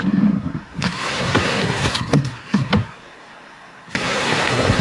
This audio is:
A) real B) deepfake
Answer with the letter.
B